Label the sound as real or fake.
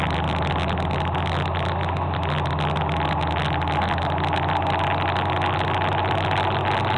real